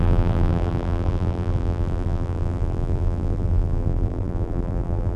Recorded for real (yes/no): no